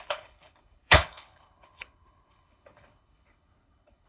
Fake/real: fake